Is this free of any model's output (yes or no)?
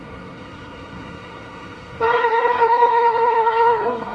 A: no